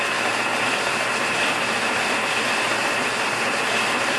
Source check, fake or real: real